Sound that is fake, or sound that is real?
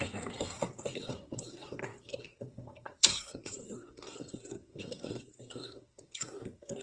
fake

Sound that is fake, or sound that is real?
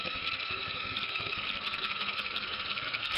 fake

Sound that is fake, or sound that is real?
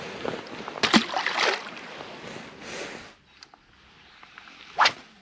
real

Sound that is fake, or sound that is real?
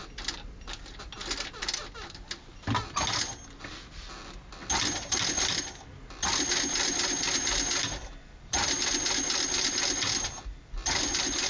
real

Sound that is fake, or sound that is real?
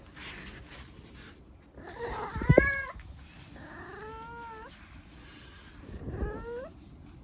real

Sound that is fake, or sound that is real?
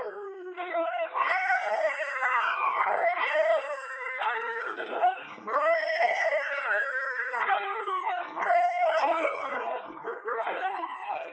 fake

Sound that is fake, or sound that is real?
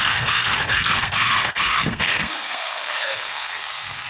fake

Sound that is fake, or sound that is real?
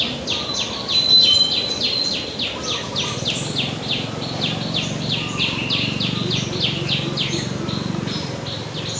real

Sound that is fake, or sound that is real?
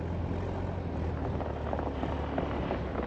real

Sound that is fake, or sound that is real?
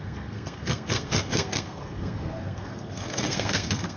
fake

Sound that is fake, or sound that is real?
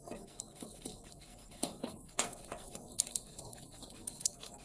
fake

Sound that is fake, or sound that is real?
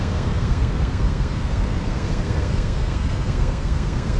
fake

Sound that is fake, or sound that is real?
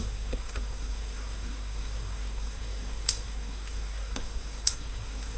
fake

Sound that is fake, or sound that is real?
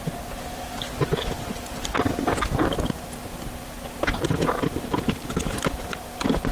real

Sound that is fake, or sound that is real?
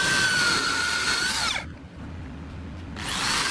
real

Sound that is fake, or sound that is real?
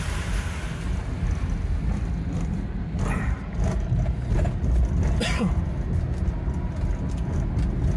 real